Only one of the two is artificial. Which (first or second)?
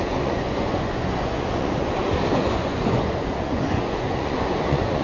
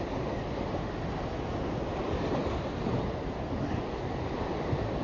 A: first